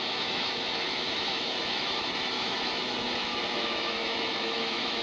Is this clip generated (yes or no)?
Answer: yes